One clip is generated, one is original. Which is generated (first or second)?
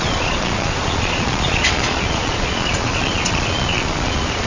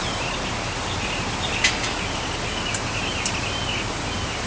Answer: first